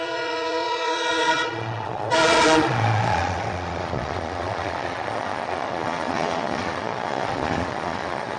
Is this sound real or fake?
fake